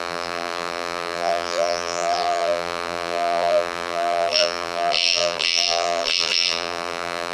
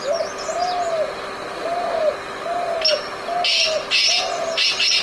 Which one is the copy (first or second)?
first